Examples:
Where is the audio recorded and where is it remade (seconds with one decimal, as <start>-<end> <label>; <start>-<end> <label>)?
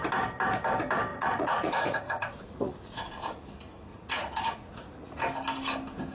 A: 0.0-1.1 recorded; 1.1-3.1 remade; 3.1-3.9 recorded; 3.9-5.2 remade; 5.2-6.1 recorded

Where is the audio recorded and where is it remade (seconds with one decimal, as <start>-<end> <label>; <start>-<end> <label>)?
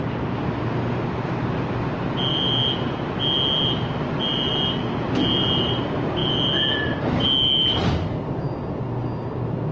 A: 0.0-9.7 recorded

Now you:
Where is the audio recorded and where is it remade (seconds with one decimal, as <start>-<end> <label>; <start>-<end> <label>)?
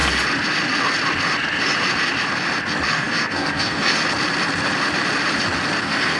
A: 0.0-2.9 recorded; 2.9-4.0 remade; 4.0-5.8 recorded; 5.8-6.2 remade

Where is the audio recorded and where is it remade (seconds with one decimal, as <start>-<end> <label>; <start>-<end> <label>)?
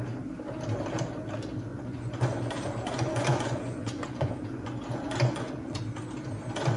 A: 0.0-1.7 recorded; 1.7-5.8 remade; 5.8-6.8 recorded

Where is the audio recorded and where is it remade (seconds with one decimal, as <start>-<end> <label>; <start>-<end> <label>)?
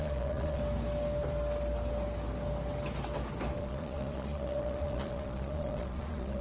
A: 0.0-0.6 remade; 0.6-3.6 recorded; 3.6-6.4 remade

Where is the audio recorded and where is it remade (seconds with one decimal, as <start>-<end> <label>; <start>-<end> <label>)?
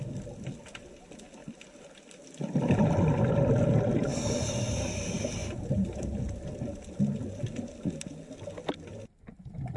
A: 0.0-5.4 recorded; 5.4-6.2 remade; 6.2-9.8 recorded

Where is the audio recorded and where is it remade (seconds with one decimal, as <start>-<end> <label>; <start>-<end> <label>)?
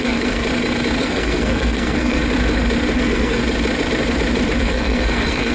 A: 0.0-0.4 remade; 0.4-1.0 recorded; 1.0-2.2 remade; 2.2-3.0 recorded; 3.0-3.4 remade; 3.4-4.6 recorded; 4.6-5.5 remade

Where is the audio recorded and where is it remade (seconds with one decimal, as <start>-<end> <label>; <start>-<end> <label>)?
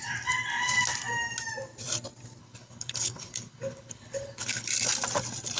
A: 0.0-2.4 recorded; 2.4-4.7 remade; 4.7-5.6 recorded